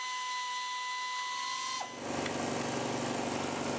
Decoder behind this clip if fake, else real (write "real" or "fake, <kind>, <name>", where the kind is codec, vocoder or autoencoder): real